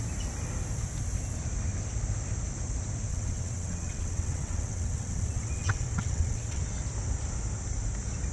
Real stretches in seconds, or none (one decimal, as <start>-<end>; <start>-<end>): 0.0-3.1; 6.6-8.3